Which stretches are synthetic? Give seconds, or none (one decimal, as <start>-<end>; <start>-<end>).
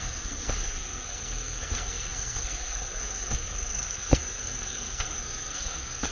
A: 0.0-6.1